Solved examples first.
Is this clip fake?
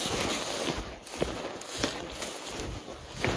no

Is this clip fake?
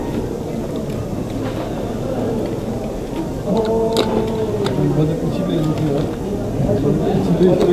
no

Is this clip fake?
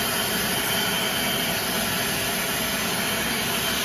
no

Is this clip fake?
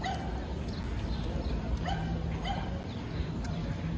no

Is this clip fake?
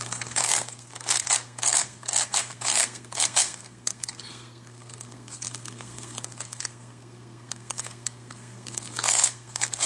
yes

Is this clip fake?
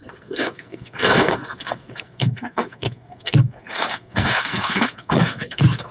yes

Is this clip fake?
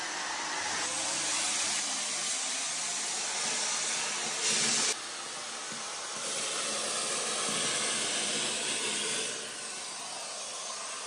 no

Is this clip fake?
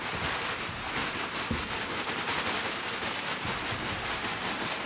no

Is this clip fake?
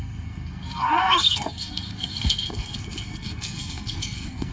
yes